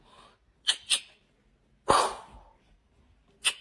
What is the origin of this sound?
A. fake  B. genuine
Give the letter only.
B